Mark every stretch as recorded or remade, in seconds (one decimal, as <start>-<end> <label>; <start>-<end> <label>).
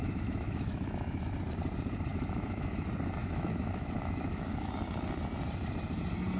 0.0-1.2 remade; 1.2-2.1 recorded; 2.1-2.7 remade; 2.7-3.2 recorded; 3.2-4.7 remade; 4.7-6.4 recorded